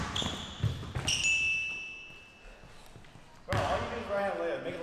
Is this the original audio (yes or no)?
yes